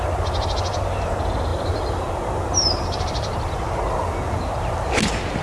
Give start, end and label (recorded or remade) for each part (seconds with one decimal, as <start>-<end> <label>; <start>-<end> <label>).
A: 0.0-1.5 recorded; 1.5-3.5 remade; 3.5-5.4 recorded